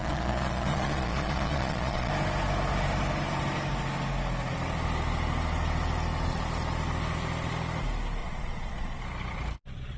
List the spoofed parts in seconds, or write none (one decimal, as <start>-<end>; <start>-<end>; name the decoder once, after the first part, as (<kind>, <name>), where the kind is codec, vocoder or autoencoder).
0.0-2.1 (vocoder, Vocos); 8.2-9.0